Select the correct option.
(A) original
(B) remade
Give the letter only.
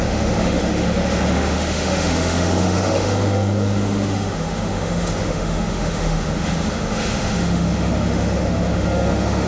B